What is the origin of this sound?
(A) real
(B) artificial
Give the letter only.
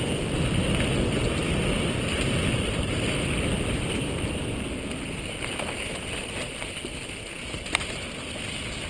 A